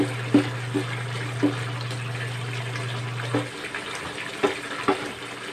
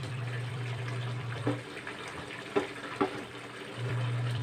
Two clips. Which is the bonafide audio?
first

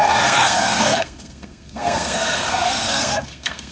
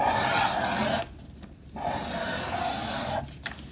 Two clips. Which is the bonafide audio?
second